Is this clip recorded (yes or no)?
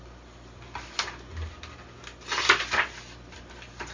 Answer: yes